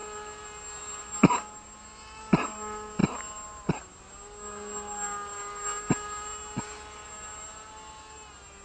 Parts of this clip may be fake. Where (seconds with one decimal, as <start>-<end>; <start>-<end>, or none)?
none